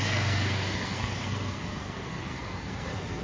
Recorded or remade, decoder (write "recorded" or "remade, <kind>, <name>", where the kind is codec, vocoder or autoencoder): remade, codec, SNAC